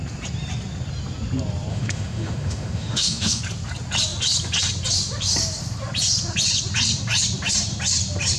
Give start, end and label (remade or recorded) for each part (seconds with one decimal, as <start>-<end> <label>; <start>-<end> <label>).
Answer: 0.0-1.7 recorded; 1.7-3.4 remade; 3.4-8.4 recorded

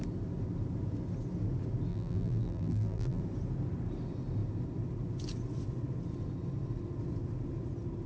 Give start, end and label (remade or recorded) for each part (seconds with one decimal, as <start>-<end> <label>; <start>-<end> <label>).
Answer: 0.0-1.9 recorded; 1.9-3.2 remade; 3.2-8.1 recorded

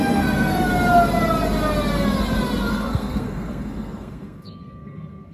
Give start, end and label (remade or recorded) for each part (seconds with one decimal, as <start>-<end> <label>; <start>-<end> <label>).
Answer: 0.0-0.7 remade; 0.7-2.7 recorded; 2.7-5.3 remade

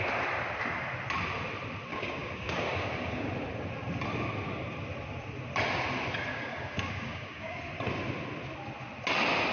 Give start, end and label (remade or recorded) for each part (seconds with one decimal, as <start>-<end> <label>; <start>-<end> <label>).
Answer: 0.0-1.9 recorded; 1.9-3.3 remade; 3.3-6.3 recorded; 6.3-7.6 remade; 7.6-9.5 recorded